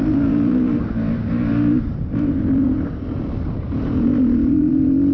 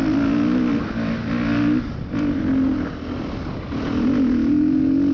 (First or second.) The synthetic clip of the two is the first